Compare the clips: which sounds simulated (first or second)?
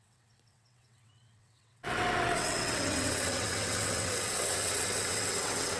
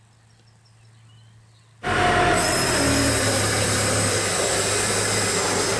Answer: first